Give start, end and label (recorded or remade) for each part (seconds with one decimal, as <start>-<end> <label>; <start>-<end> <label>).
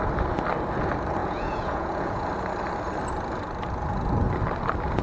0.0-1.2 recorded; 1.2-2.2 remade; 2.2-5.0 recorded